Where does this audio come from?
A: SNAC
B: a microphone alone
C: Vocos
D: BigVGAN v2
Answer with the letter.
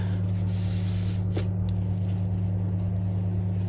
B